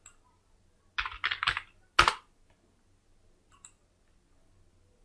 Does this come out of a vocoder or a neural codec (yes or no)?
no